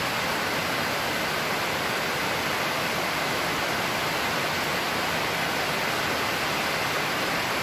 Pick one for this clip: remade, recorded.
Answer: recorded